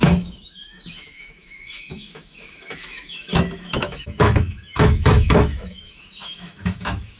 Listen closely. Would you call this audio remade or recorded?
remade